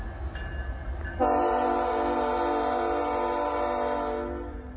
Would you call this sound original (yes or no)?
yes